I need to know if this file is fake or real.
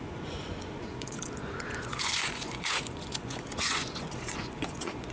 fake